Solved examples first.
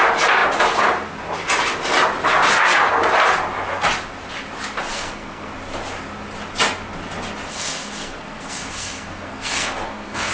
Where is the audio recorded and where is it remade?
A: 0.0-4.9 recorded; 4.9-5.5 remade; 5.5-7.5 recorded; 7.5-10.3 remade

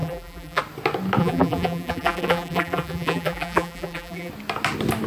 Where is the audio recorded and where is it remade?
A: 0.0-0.6 remade; 0.6-1.2 recorded; 1.2-4.3 remade; 4.3-5.1 recorded

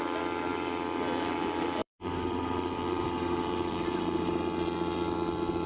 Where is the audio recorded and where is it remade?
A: 0.0-1.8 recorded; 1.8-4.4 remade; 4.4-5.7 recorded

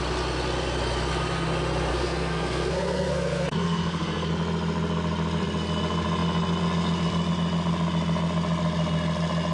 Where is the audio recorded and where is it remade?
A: 0.0-1.9 recorded; 1.9-4.3 remade; 4.3-9.5 recorded

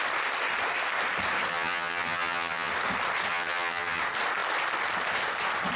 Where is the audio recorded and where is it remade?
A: 0.0-1.5 recorded; 1.5-2.7 remade; 2.7-3.3 recorded; 3.3-4.0 remade; 4.0-5.8 recorded

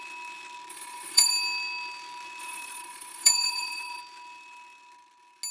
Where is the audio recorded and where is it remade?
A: 0.0-0.7 recorded; 0.7-1.3 remade; 1.3-2.4 recorded; 2.4-4.0 remade; 4.0-5.5 recorded